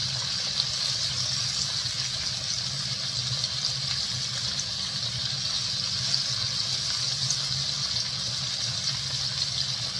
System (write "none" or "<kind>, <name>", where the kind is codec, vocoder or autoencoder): none